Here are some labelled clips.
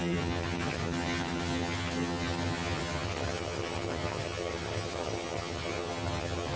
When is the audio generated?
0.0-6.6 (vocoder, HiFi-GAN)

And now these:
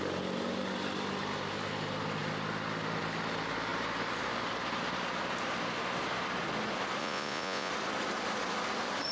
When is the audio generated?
7.0-7.7 (vocoder, Vocos)

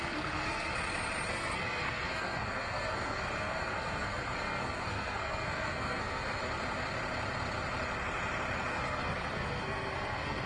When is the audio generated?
0.0-0.7 (codec, SNAC); 1.3-6.4; 8.7-10.5